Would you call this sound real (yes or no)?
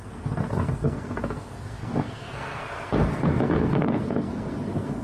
no